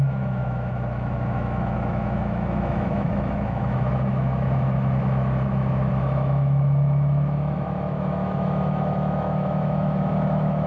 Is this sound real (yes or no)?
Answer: no